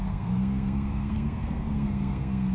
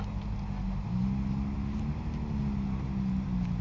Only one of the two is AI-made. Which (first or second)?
first